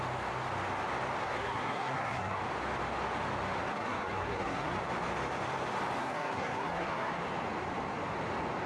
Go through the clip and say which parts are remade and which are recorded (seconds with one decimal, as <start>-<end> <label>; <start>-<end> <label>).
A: 0.0-1.2 recorded; 1.2-2.4 remade; 2.4-3.7 recorded; 3.7-4.7 remade; 4.7-6.0 recorded; 6.0-7.1 remade; 7.1-8.7 recorded